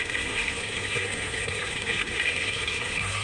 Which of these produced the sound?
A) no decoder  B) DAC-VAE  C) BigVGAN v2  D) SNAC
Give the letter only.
D